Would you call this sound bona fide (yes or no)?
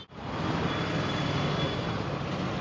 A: yes